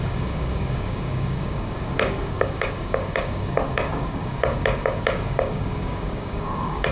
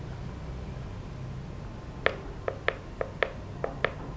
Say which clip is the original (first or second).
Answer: second